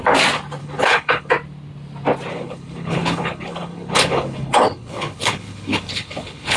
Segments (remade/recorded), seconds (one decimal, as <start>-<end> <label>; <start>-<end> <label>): 0.0-0.6 recorded; 0.6-1.3 remade; 1.3-2.3 recorded; 2.3-6.6 remade